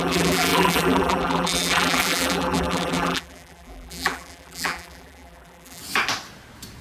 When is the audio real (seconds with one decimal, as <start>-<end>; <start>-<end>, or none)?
5.8-6.8